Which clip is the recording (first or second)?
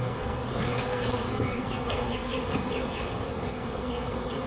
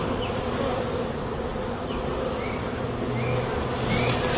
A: second